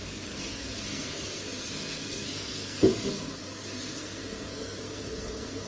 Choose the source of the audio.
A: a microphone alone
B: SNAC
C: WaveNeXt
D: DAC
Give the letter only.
B